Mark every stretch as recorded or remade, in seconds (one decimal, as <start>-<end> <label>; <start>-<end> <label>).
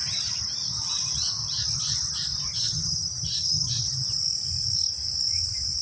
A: 0.0-2.5 recorded; 2.5-3.7 remade; 3.7-5.8 recorded